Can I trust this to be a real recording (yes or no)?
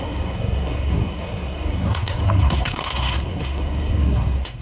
no